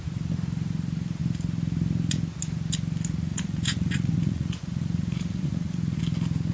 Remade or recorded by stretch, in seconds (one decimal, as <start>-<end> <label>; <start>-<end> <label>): 0.0-3.3 recorded; 3.3-6.0 remade; 6.0-6.5 recorded